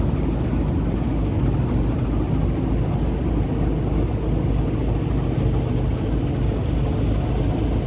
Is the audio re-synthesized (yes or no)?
no